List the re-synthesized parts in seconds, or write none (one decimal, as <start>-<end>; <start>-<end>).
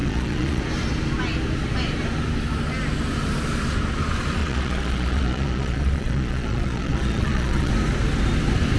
0.0-0.6; 4.4-7.7